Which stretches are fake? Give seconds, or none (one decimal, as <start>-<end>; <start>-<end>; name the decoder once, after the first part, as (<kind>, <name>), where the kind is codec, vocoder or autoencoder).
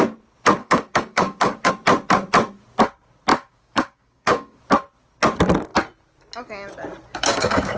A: 0.6-1.7 (codec, DAC); 3.3-4.6; 7.1-7.8